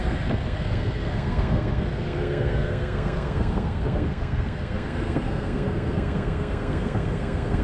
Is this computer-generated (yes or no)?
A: yes